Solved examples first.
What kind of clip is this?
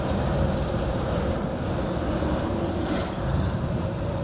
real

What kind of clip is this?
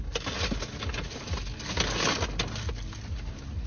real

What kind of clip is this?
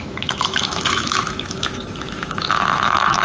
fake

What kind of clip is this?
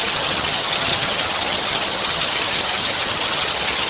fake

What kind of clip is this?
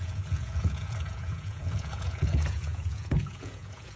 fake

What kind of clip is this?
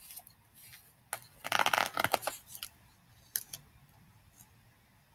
real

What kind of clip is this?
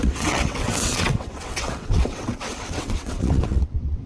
fake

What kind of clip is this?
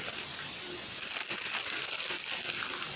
real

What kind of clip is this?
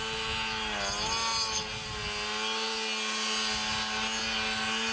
real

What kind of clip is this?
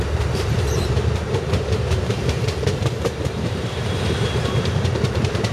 fake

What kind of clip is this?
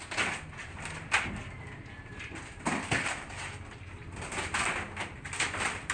real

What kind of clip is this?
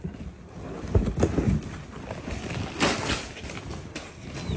real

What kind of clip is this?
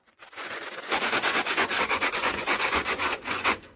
fake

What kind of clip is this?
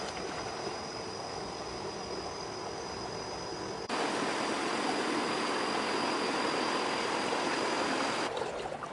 real